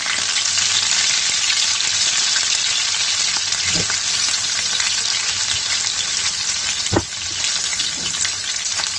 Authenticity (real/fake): real